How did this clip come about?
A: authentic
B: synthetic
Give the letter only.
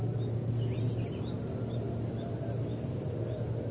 A